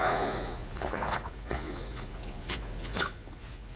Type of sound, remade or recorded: remade